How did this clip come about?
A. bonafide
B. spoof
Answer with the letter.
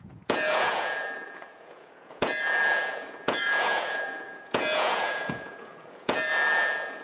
B